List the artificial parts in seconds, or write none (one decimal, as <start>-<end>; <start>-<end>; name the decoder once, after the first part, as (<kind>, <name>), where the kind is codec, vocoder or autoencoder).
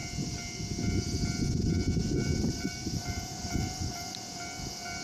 2.0-4.1 (vocoder, BigVGAN v2)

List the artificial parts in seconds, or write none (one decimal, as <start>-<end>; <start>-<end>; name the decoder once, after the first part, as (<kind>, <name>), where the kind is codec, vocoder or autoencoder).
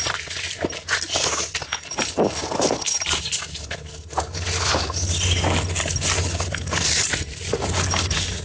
none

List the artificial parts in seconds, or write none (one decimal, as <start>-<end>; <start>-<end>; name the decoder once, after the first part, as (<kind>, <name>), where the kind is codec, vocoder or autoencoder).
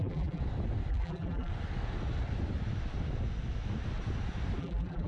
0.0-0.4 (vocoder, BigVGAN v2); 0.9-1.5; 4.6-5.1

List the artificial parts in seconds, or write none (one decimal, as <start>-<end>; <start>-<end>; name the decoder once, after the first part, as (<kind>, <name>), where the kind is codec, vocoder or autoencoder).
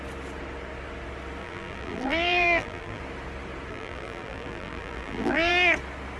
1.4-3.0 (vocoder, BigVGAN v2); 3.7-5.5